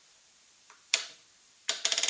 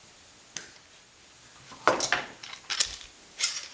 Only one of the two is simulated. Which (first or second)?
first